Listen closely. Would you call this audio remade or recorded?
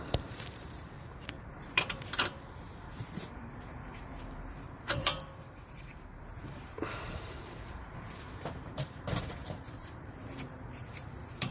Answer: remade